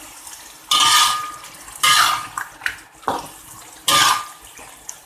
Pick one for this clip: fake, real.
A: fake